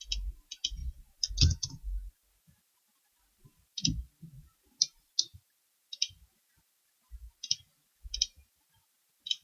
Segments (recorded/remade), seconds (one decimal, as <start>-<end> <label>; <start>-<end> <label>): 0.0-9.4 recorded